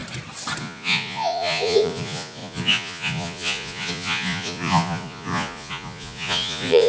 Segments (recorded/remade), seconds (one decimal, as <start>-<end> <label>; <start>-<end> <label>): 0.0-0.6 recorded; 0.6-6.9 remade